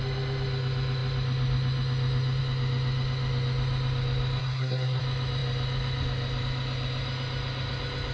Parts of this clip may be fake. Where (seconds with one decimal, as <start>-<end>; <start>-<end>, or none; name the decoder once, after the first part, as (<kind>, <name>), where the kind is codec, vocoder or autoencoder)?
4.4-5.0 (codec, SNAC)